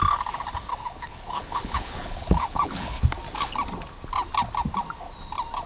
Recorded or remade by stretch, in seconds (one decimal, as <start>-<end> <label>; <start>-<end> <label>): 0.0-0.7 recorded; 0.7-3.0 remade; 3.0-5.7 recorded